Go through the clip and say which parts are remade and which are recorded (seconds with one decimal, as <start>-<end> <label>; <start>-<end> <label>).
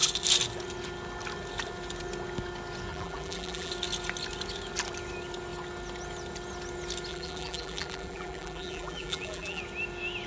0.0-2.9 recorded; 2.9-3.7 remade; 3.7-7.1 recorded; 7.1-9.6 remade; 9.6-10.3 recorded